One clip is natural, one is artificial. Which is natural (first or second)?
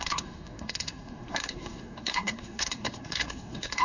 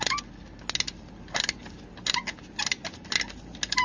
second